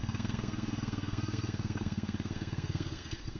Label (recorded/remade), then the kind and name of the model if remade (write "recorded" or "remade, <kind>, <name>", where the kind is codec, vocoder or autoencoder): remade, codec, SNAC